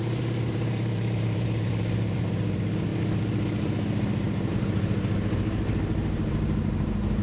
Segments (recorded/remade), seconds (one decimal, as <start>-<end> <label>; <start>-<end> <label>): 0.0-7.2 remade

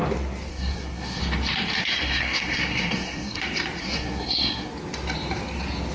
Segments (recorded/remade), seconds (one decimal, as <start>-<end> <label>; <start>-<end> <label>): 0.0-0.5 recorded; 0.5-1.2 remade; 1.2-1.8 recorded; 1.8-3.4 remade; 3.4-3.8 recorded; 3.8-4.7 remade; 4.7-5.9 recorded

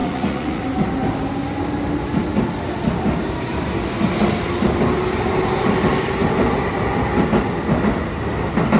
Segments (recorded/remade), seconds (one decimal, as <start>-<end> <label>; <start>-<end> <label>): 0.0-0.6 remade; 0.6-8.8 recorded

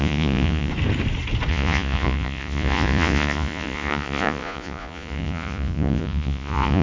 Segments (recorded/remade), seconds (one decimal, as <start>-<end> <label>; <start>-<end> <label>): 0.0-0.7 remade; 0.7-1.5 recorded; 1.5-6.8 remade

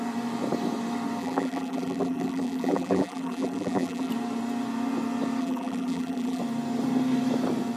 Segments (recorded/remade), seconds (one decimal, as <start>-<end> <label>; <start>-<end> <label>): 0.0-1.2 recorded; 1.2-4.1 remade; 4.1-5.4 recorded; 5.4-6.4 remade; 6.4-7.8 recorded

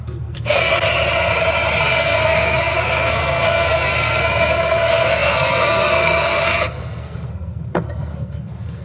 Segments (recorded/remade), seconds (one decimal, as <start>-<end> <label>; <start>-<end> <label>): 0.0-0.7 remade; 0.7-1.8 recorded; 1.8-8.8 remade

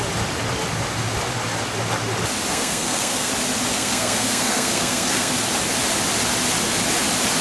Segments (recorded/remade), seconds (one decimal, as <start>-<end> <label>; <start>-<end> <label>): 0.0-2.5 recorded; 2.5-3.3 remade; 3.3-3.7 recorded; 3.7-5.3 remade; 5.3-7.4 recorded

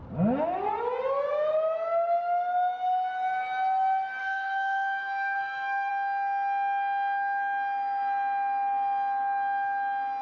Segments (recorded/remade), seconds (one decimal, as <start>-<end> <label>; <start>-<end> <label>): 0.0-4.2 recorded; 4.2-5.9 remade; 5.9-10.2 recorded